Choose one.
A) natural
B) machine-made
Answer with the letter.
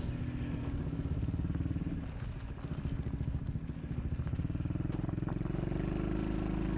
A